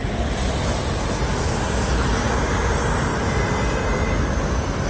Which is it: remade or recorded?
recorded